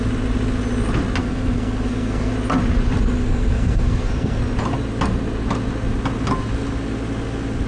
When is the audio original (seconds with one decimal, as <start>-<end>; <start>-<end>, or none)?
0.0-1.2; 2.3-3.2; 4.4-7.7